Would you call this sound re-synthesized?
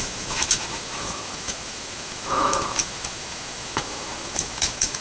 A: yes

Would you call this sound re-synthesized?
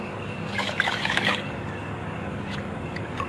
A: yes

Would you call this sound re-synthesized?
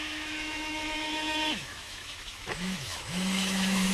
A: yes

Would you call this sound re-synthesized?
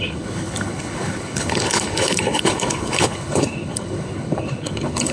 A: yes